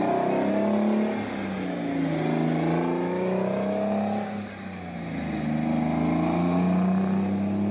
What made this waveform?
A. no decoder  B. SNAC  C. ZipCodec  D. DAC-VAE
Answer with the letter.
A